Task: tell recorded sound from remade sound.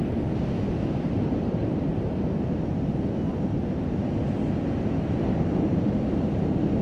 recorded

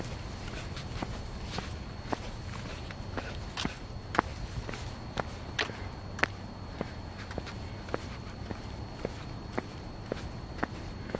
recorded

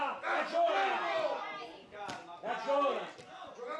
recorded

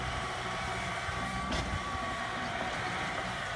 remade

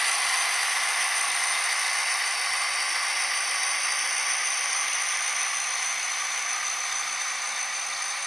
recorded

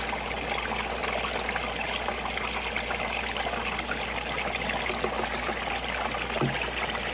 recorded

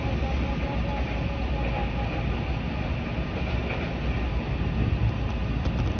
recorded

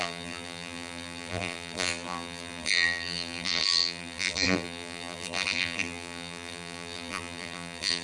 remade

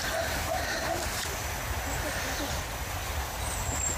recorded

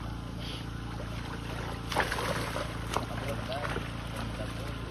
recorded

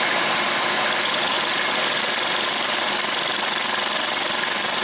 remade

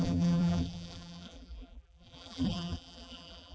remade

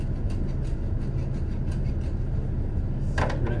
recorded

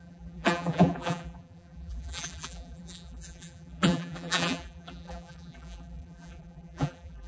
remade